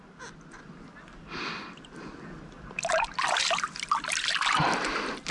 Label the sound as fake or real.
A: real